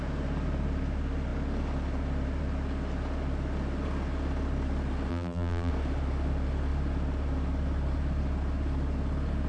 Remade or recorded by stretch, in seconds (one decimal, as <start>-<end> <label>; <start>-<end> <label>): 0.0-5.1 recorded; 5.1-5.7 remade; 5.7-9.5 recorded